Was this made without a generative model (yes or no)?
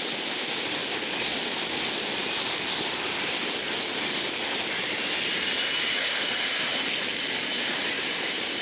yes